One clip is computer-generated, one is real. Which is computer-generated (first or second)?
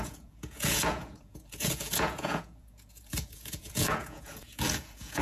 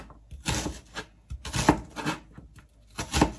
first